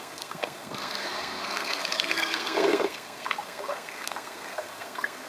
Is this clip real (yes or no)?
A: no